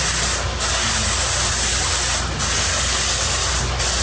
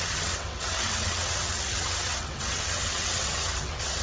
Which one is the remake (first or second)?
second